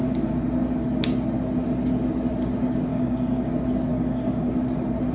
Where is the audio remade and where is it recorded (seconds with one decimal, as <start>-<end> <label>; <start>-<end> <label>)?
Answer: 0.0-2.9 recorded; 2.9-3.5 remade; 3.5-3.9 recorded; 3.9-4.5 remade; 4.5-5.1 recorded